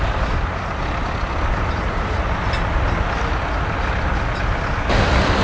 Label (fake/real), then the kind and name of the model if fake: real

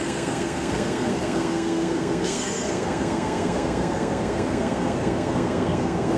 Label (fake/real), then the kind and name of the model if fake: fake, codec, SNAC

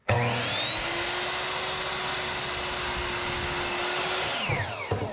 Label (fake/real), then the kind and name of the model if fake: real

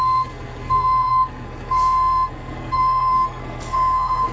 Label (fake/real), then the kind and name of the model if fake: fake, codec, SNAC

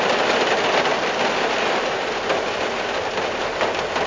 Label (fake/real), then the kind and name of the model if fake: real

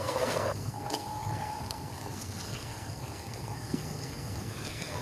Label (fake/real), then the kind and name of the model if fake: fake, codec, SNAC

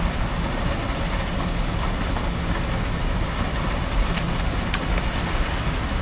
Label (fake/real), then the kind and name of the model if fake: real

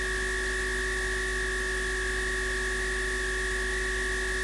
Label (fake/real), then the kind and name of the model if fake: real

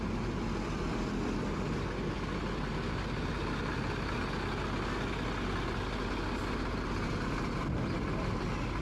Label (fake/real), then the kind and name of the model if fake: real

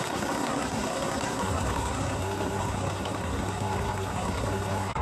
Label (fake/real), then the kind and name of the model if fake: fake, codec, SNAC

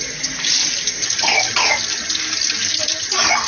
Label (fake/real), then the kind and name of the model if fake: real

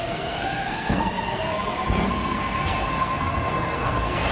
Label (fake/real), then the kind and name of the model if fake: fake, codec, SNAC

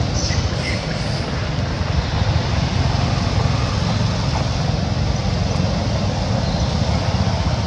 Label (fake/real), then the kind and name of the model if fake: real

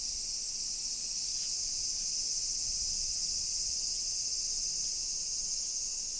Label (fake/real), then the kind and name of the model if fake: real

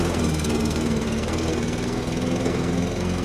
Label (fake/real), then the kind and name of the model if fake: fake, codec, SNAC